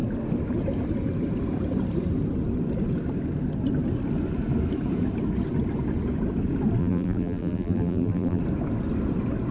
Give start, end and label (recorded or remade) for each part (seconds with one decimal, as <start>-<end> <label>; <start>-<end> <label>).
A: 0.0-6.8 recorded; 6.8-8.4 remade; 8.4-9.5 recorded